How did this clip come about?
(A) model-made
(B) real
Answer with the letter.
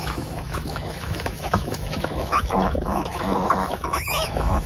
A